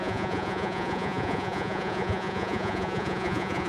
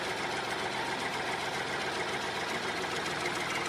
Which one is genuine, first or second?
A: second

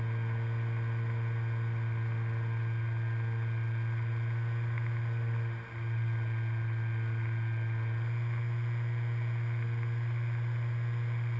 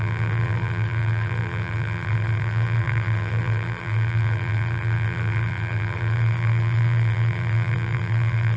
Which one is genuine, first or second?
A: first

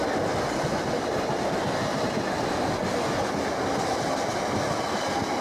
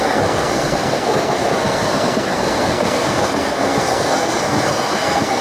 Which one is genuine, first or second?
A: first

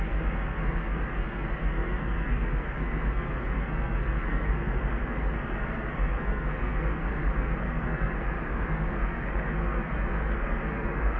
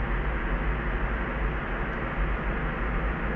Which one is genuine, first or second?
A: second